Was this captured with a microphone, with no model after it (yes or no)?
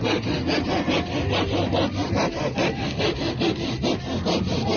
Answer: yes